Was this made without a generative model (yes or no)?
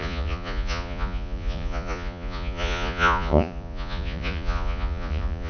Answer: no